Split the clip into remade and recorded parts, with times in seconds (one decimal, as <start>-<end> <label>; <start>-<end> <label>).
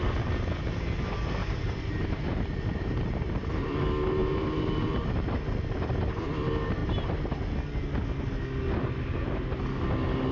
0.0-1.4 recorded; 1.4-3.8 remade; 3.8-4.2 recorded; 4.2-5.3 remade; 5.3-6.8 recorded; 6.8-7.4 remade; 7.4-10.3 recorded